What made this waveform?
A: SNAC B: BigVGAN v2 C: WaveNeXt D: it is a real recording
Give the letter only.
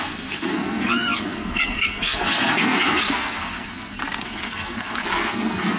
A